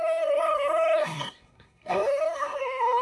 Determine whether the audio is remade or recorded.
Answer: remade